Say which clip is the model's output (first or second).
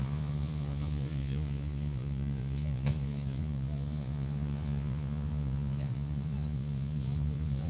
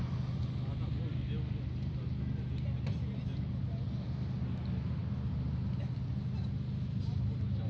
first